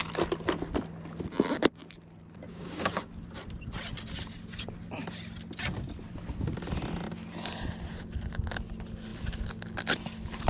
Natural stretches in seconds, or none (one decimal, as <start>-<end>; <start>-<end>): 0.0-2.5; 3.1-10.5